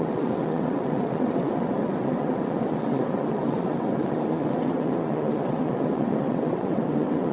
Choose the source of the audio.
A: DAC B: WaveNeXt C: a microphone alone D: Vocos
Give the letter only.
B